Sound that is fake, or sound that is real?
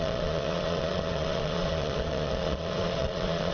fake